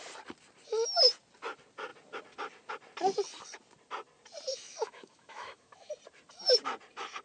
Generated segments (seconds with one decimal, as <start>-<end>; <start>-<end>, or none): 4.5-5.9